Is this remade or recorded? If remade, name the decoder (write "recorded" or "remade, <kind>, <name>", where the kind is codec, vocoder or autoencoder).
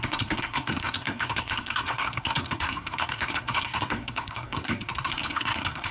remade, codec, SNAC